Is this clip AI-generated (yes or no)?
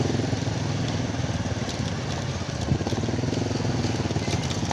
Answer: no